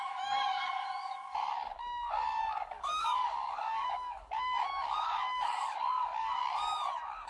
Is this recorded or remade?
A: remade